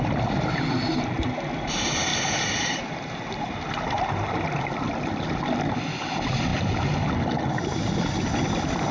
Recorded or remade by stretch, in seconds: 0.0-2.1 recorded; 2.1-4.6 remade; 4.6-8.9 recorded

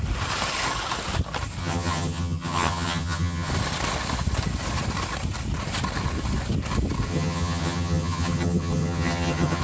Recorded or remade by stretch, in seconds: 0.0-1.6 recorded; 1.6-3.5 remade; 3.5-7.1 recorded; 7.1-9.6 remade

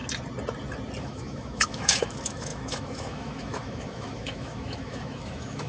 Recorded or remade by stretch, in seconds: 0.0-1.0 recorded; 1.0-5.7 remade

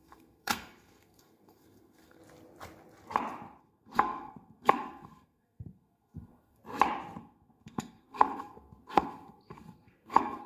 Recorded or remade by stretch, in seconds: 0.0-2.2 remade; 2.2-3.6 recorded; 3.6-6.6 remade; 6.6-7.2 recorded; 7.2-10.5 remade